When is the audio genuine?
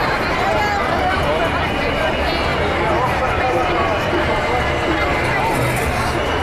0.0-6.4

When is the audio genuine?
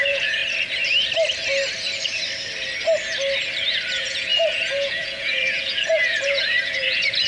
0.4-3.9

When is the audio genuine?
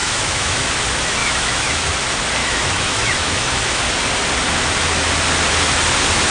0.7-1.2; 1.9-2.4; 3.8-6.3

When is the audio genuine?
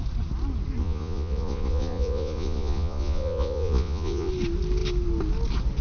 0.0-0.8; 4.3-5.8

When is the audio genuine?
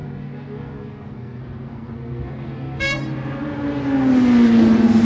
3.0-5.0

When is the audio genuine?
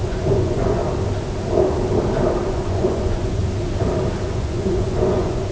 0.8-2.5; 3.4-4.3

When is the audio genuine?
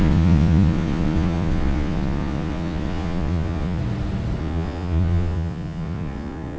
3.8-4.4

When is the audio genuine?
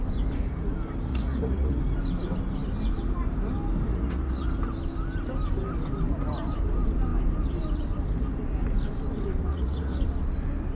0.0-1.1; 1.8-3.9; 4.5-9.5; 10.0-10.7